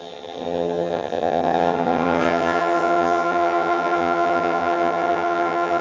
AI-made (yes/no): yes